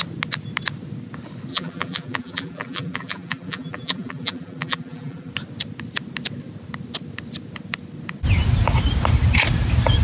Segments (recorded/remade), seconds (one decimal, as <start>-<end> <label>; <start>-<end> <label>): 0.0-1.5 recorded; 1.5-5.3 remade; 5.3-10.0 recorded